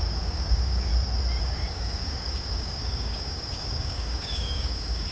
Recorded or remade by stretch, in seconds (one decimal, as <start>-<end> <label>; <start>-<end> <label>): 0.0-0.9 remade; 0.9-1.4 recorded; 1.4-5.1 remade

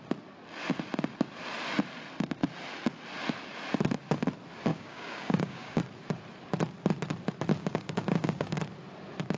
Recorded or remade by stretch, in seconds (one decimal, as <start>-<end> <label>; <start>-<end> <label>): 0.0-4.7 recorded; 4.7-5.8 remade; 5.8-7.6 recorded; 7.6-8.6 remade; 8.6-9.4 recorded